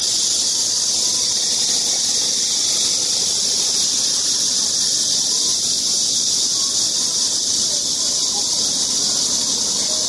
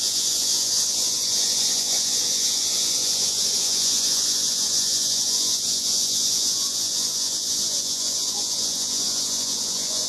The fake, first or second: second